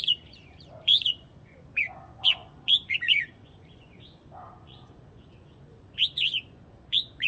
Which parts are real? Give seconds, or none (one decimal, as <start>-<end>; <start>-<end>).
none